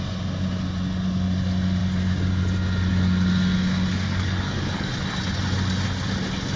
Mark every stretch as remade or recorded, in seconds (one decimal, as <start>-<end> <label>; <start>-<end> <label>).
0.0-3.9 recorded; 3.9-4.9 remade; 4.9-6.6 recorded